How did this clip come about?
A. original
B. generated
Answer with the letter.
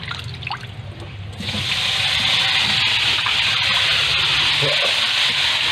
A